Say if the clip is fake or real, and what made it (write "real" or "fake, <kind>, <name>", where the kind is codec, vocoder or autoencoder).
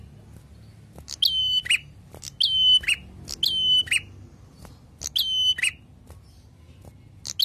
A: real